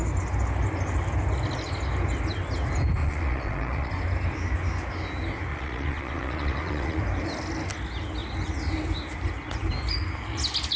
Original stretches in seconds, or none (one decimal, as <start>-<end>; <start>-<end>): 0.0-3.0; 3.9-5.5; 7.0-10.8